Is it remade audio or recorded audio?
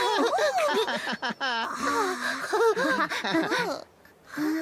recorded